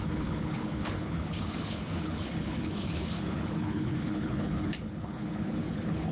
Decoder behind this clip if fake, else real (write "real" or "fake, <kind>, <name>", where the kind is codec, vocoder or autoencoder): fake, codec, HILCodec